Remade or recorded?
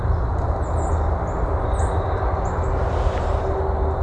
recorded